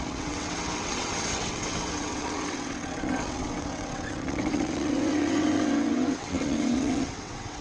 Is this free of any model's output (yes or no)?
no